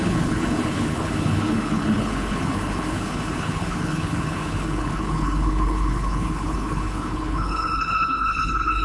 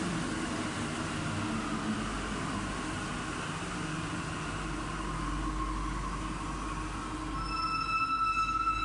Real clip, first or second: second